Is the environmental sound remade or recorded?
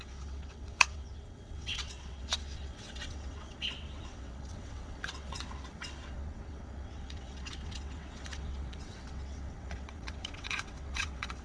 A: remade